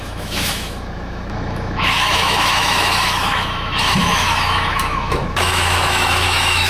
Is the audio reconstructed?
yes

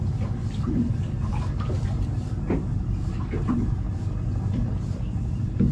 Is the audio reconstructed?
no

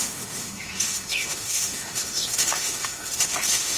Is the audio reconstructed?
yes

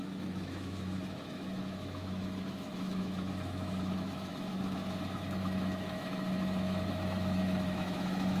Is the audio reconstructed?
yes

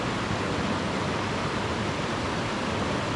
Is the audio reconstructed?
no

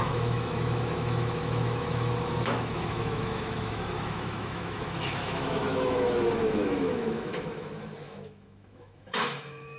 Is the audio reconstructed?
yes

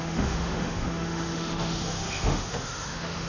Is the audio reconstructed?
yes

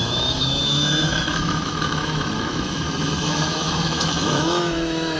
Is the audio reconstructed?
yes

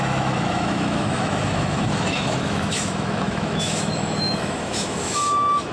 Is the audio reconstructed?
yes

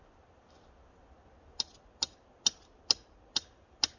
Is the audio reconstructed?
no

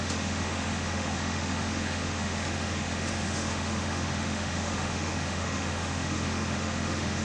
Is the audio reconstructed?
yes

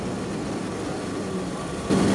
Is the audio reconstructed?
no